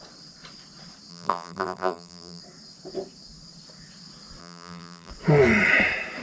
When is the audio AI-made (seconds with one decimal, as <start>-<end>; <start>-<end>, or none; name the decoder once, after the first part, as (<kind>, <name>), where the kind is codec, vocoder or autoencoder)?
1.1-2.4 (vocoder, BigVGAN v2); 4.4-5.1